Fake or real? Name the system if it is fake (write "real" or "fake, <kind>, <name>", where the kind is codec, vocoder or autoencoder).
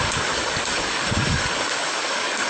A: fake, codec, DAC